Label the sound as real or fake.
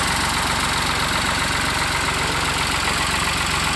real